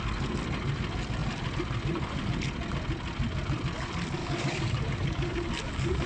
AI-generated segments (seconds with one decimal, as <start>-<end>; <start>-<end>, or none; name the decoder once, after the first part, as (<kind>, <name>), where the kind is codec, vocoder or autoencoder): 4.2-6.1 (codec, DAC)